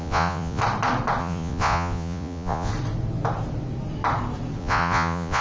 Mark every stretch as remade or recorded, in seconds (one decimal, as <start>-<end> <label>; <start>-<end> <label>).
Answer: 0.0-0.6 remade; 0.6-1.2 recorded; 1.2-2.7 remade; 2.7-4.6 recorded; 4.6-5.4 remade